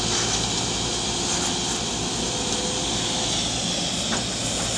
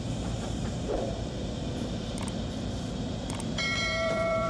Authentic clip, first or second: first